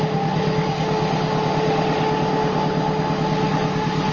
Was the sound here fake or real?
real